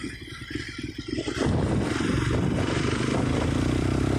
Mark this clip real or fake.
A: fake